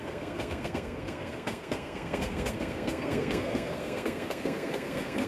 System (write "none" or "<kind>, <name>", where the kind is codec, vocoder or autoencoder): codec, SNAC